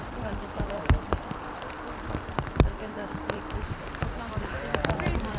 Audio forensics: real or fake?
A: fake